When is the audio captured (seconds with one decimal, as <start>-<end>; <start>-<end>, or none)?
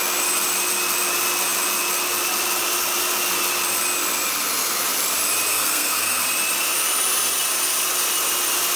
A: 0.0-5.5; 6.2-8.8